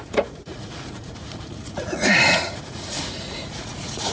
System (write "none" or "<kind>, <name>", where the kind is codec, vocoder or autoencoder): vocoder, Vocos